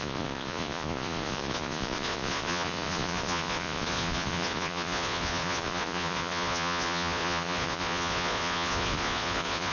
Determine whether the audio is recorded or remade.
remade